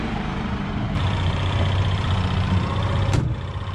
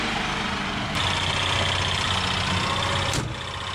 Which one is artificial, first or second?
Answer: first